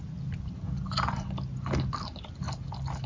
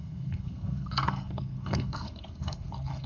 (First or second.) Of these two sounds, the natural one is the first